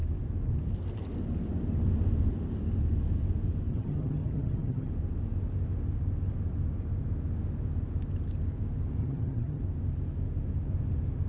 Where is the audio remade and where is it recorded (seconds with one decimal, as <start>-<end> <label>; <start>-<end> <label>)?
0.0-3.7 recorded; 3.7-4.9 remade; 4.9-9.0 recorded; 9.0-9.6 remade; 9.6-11.3 recorded